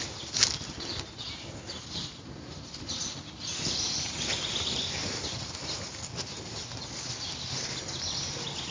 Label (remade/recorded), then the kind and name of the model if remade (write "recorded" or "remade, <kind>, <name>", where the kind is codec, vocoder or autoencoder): recorded